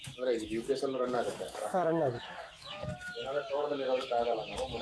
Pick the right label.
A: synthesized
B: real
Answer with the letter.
A